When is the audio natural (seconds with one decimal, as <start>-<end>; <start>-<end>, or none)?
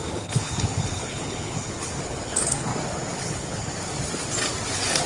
2.7-3.2; 3.7-5.1